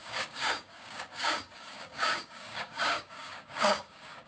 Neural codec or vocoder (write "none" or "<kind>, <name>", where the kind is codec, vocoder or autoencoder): codec, DAC